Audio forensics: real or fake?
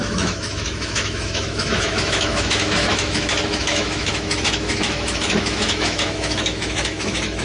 fake